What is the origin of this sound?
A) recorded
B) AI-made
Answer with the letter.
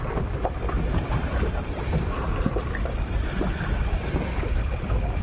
B